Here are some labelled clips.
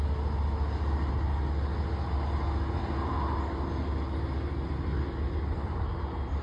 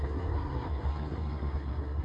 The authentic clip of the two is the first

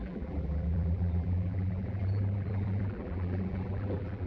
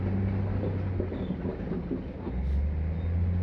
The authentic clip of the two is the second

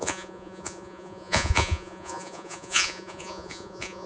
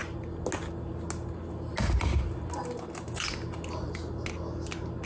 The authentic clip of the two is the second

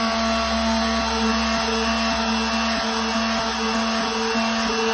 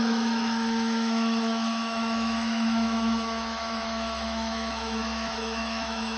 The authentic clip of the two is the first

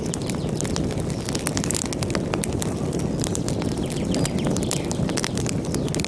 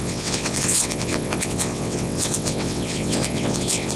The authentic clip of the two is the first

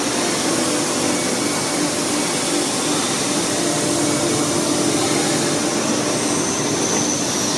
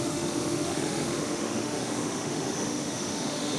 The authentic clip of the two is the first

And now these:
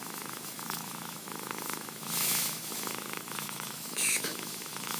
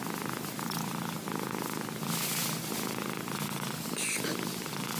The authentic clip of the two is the second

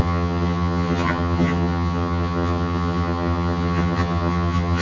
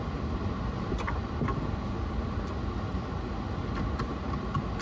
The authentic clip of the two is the second